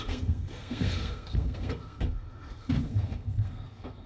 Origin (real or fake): fake